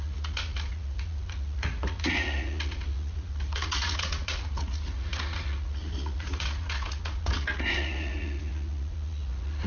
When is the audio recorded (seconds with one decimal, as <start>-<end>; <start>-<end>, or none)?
none